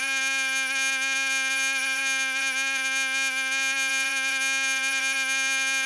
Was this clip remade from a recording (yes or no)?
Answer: yes